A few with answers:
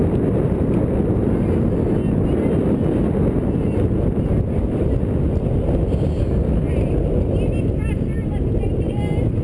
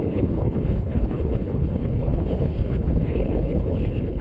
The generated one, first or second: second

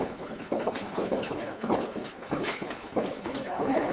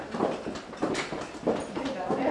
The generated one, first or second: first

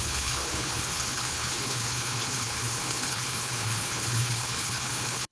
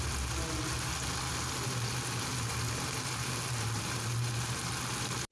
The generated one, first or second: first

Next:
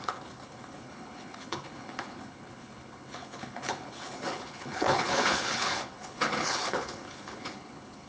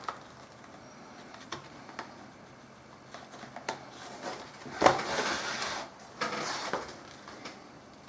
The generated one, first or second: first